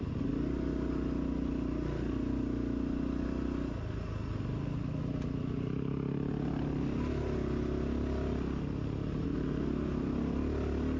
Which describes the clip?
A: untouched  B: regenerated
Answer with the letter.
A